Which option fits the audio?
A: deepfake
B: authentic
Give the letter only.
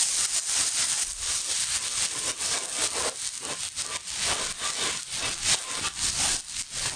B